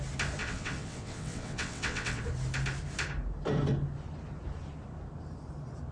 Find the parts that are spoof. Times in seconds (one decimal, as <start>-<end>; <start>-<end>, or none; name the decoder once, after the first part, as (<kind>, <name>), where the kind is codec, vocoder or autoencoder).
0.4-2.2 (vocoder, WaveNeXt)